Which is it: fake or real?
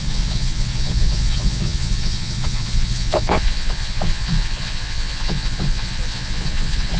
fake